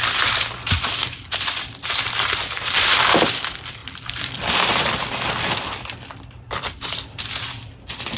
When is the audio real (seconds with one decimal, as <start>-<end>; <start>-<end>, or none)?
none